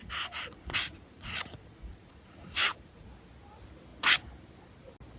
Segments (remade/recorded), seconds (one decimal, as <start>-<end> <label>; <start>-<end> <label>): 0.0-3.1 remade; 3.1-5.2 recorded